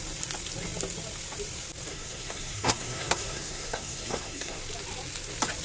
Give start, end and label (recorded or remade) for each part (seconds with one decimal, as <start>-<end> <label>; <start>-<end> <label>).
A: 0.0-1.9 recorded; 1.9-4.6 remade; 4.6-5.6 recorded